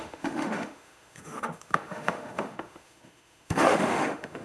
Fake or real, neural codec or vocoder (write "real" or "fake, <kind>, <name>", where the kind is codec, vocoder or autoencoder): fake, autoencoder, DAC-VAE